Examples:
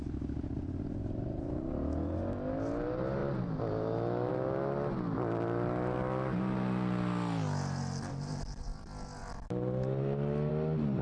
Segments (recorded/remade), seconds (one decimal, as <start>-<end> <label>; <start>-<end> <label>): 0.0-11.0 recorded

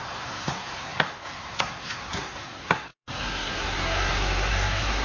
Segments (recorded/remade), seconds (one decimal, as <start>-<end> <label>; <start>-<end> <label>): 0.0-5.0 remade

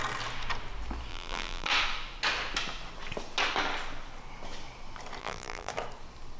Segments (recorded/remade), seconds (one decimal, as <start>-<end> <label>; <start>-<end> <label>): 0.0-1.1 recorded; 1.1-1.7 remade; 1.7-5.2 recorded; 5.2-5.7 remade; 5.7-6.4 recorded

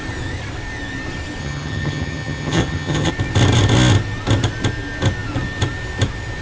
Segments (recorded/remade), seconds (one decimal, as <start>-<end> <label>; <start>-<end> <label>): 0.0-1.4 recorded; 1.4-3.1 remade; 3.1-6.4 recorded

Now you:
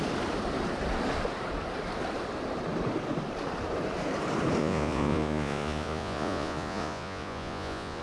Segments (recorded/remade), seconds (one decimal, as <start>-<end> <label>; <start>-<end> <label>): 0.0-4.6 recorded; 4.6-8.0 remade

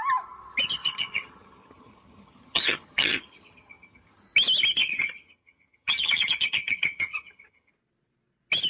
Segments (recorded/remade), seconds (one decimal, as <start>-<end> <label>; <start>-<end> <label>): 0.0-0.8 recorded; 0.8-4.2 remade; 4.2-4.8 recorded; 4.8-7.7 remade; 7.7-8.7 recorded